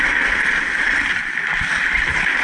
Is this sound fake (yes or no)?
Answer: no